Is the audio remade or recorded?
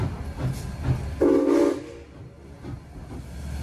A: recorded